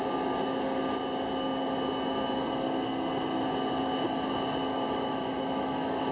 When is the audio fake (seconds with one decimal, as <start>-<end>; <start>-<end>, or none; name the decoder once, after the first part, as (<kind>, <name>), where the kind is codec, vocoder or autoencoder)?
4.7-6.1 (autoencoder, DAC-VAE)